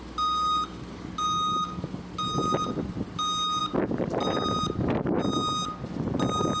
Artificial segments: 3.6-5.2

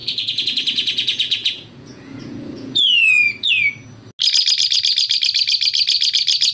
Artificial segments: 0.0-3.5